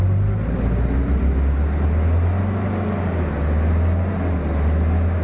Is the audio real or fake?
real